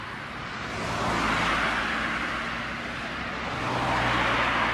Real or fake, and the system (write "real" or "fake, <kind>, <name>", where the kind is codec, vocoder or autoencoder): real